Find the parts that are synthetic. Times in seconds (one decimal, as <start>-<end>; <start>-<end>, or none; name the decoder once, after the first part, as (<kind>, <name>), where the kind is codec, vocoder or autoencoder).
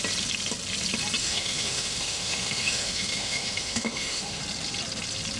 1.2-4.4 (autoencoder, DAC-VAE)